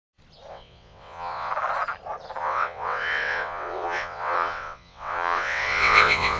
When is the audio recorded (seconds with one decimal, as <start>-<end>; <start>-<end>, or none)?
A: 0.0-0.5; 1.5-2.4